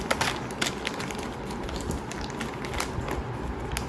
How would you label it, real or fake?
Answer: real